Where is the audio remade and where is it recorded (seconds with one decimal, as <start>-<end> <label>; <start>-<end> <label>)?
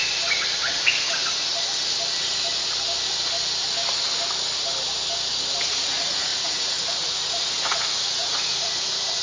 0.0-0.7 recorded; 0.7-1.2 remade; 1.2-5.6 recorded; 5.6-9.2 remade